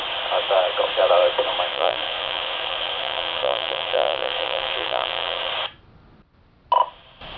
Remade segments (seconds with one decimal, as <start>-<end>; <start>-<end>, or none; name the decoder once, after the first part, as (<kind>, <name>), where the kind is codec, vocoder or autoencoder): 1.7-5.5 (vocoder, Vocos)